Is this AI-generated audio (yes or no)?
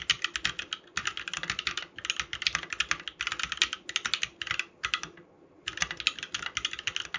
no